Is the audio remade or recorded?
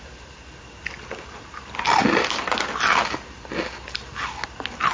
recorded